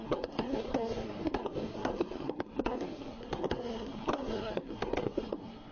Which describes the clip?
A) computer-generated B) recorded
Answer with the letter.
A